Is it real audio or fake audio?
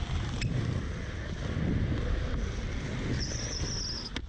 real